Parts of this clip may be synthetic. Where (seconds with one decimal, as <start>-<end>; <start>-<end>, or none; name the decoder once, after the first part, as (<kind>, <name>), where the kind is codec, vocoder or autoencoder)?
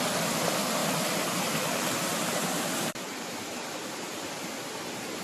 2.1-5.2 (vocoder, BigVGAN v2)